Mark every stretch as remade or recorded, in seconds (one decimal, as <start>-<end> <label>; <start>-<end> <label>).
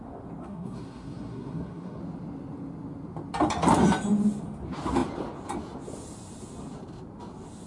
0.0-0.4 recorded; 0.4-2.0 remade; 2.0-7.7 recorded